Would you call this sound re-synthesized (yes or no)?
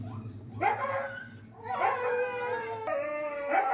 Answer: no